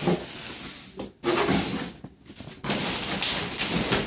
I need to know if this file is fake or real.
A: real